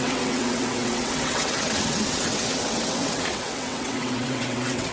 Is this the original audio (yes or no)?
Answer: no